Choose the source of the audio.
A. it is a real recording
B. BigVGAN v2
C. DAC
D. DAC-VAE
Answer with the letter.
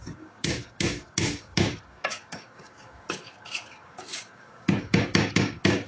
C